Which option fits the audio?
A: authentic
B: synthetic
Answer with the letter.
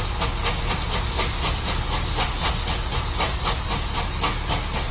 A